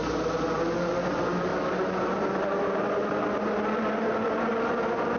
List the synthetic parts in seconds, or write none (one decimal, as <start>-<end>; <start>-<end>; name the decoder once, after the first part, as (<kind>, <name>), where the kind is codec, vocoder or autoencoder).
none